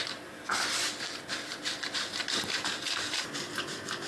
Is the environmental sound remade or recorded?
remade